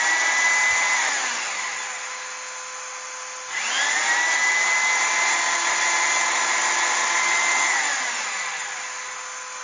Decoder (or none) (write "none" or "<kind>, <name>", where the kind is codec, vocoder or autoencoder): none